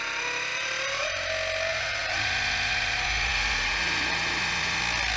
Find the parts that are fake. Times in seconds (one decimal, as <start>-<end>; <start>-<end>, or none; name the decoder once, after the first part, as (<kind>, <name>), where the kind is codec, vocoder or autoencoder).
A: 1.7-4.8 (vocoder, Vocos)